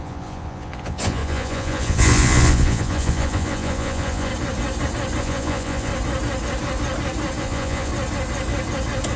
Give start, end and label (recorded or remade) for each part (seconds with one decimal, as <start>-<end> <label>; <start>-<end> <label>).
0.0-4.3 remade; 4.3-5.2 recorded; 5.2-5.9 remade; 5.9-7.4 recorded; 7.4-7.9 remade; 7.9-9.2 recorded